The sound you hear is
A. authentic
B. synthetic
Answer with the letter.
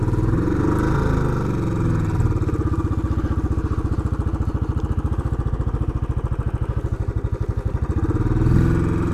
A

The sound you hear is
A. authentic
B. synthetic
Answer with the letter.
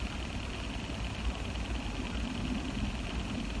A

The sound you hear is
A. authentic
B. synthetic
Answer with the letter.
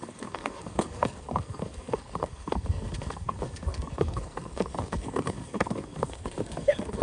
B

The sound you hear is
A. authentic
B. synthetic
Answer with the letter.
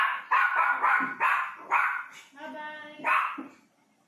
A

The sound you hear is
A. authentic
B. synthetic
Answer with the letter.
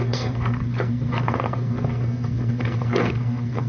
B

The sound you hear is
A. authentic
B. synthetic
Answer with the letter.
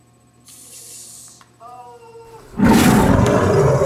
A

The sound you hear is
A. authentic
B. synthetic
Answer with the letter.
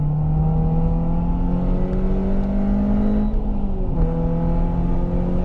A